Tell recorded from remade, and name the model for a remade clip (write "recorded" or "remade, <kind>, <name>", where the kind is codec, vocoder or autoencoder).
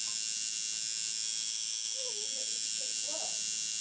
recorded